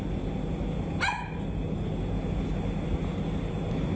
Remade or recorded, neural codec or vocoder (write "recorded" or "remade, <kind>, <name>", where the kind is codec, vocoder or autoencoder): recorded